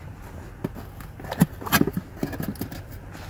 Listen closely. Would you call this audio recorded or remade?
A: recorded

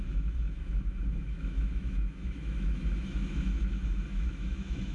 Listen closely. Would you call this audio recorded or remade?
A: remade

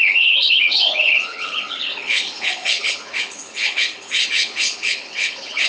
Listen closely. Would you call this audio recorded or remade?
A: remade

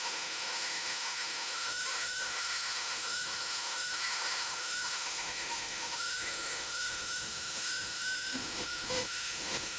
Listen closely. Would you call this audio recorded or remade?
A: remade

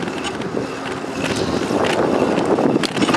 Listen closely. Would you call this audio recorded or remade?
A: recorded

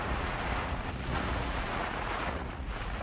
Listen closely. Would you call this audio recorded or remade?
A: remade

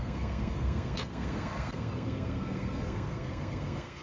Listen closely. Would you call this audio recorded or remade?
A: remade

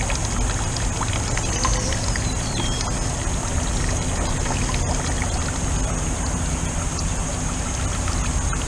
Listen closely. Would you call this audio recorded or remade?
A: recorded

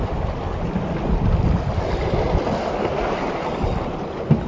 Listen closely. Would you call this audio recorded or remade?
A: recorded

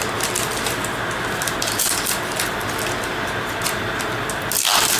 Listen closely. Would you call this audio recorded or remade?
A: recorded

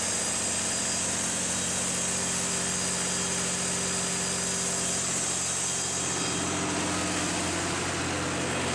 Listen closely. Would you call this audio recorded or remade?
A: recorded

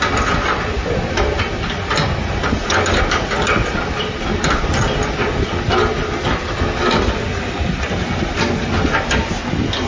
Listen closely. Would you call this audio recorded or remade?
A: recorded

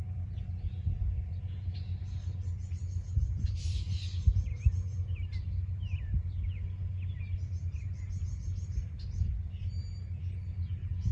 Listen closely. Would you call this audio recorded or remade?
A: recorded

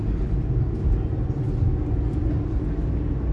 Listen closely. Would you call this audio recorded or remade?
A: recorded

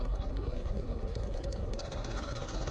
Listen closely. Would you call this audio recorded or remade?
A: remade